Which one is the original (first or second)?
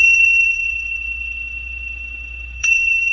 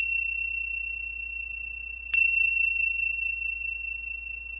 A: second